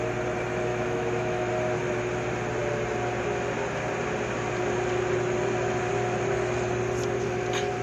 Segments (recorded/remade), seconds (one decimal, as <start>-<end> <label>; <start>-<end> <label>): 0.0-0.7 recorded; 0.7-1.5 remade; 1.5-7.8 recorded